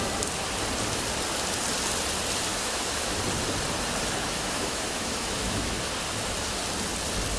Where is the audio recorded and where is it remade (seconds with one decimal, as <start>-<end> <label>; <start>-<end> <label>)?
0.0-2.5 recorded; 2.5-3.2 remade; 3.2-4.2 recorded; 4.2-5.8 remade; 5.8-7.4 recorded